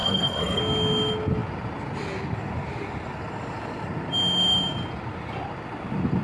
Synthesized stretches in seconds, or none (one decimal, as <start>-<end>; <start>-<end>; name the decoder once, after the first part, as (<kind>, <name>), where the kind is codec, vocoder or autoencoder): 0.0-0.6 (codec, SNAC)